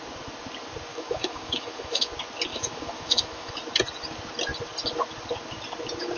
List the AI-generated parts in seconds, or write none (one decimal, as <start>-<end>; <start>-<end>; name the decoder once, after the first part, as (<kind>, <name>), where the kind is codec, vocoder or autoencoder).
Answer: 0.9-2.1 (autoencoder, DAC-VAE); 2.5-3.5